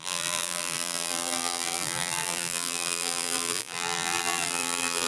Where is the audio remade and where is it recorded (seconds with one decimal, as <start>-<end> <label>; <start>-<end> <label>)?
0.0-5.1 remade